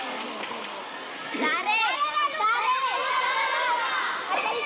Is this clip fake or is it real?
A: real